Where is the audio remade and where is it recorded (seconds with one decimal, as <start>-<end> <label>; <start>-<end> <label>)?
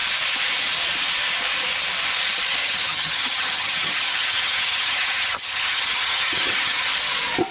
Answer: 0.0-2.6 recorded; 2.6-6.9 remade; 6.9-7.5 recorded